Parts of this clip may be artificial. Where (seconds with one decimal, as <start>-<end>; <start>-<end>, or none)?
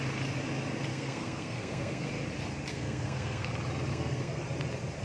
0.9-2.1; 2.7-3.5; 3.9-4.4